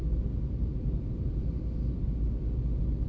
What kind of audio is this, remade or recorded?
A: recorded